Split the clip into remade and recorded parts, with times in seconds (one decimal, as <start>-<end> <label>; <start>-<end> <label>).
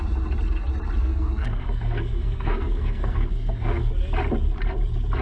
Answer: 0.0-1.0 recorded; 1.0-3.9 remade; 3.9-5.2 recorded